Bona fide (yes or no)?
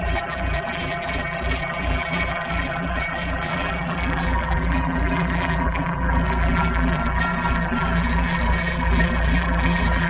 no